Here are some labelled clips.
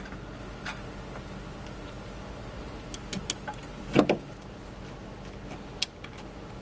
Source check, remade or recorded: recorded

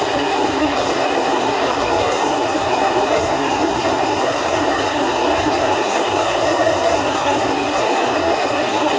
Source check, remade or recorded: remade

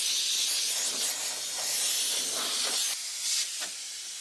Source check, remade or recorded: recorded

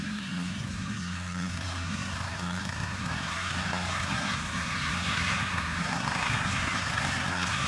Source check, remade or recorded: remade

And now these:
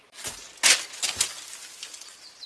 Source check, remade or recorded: recorded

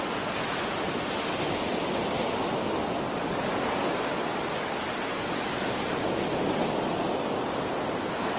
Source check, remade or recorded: recorded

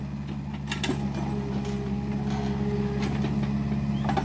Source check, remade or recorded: recorded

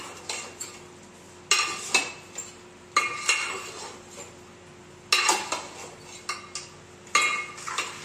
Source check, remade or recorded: recorded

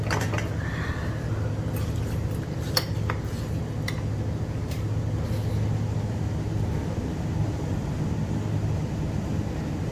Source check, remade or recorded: recorded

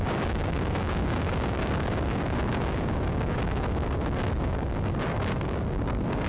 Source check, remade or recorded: remade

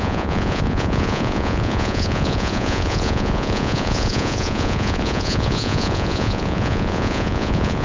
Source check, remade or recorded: remade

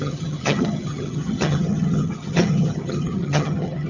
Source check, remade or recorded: remade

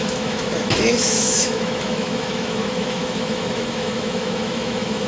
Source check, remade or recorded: remade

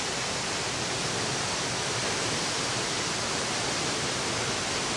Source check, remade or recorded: recorded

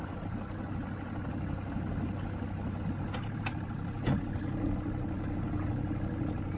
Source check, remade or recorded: recorded